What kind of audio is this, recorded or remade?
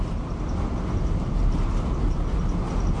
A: recorded